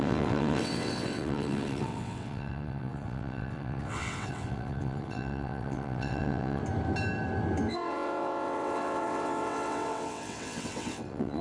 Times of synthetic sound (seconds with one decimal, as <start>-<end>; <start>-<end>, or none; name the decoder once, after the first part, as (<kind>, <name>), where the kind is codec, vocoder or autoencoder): 0.0-6.6 (vocoder, WaveNeXt); 7.7-11.4